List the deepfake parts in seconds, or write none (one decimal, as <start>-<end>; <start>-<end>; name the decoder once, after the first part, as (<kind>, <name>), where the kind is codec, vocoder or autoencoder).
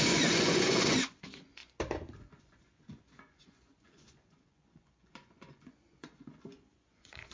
0.0-7.3 (vocoder, Vocos)